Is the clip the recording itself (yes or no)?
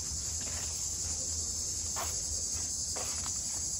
yes